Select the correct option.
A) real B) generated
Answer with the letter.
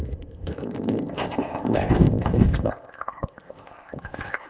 B